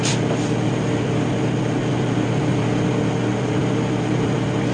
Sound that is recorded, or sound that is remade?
recorded